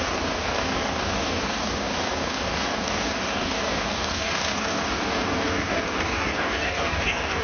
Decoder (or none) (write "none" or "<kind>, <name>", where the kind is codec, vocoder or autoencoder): codec, DAC